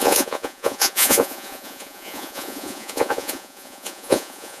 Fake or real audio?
fake